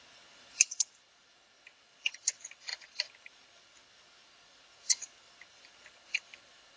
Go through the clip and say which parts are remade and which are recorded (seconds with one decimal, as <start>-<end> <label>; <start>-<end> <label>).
0.0-6.8 recorded